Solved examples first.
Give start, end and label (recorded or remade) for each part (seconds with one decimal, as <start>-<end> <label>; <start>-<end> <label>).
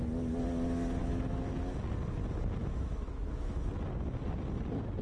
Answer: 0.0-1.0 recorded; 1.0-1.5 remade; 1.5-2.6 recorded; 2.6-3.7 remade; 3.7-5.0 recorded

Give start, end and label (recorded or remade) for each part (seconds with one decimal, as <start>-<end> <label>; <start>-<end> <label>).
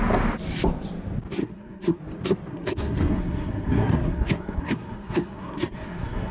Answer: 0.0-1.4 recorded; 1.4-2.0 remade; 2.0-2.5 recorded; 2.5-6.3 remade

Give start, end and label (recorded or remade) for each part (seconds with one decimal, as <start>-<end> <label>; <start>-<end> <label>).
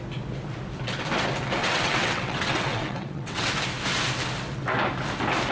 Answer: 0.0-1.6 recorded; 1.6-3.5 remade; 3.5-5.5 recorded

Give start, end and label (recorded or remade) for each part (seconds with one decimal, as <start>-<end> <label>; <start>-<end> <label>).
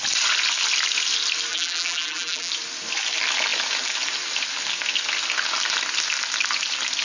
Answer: 0.0-1.5 recorded; 1.5-2.5 remade; 2.5-7.0 recorded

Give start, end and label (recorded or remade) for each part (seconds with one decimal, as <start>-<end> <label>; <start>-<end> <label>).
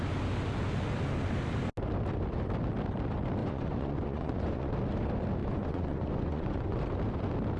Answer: 0.0-3.4 recorded; 3.4-4.7 remade; 4.7-5.4 recorded; 5.4-6.8 remade; 6.8-7.6 recorded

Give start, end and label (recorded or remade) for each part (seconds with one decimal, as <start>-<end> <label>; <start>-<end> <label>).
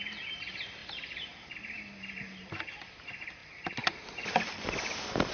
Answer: 0.0-5.3 recorded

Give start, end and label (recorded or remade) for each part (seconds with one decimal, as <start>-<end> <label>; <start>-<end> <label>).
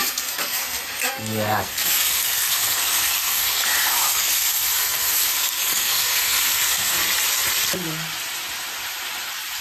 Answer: 0.0-7.0 remade; 7.0-9.6 recorded